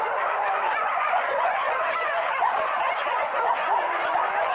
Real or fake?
fake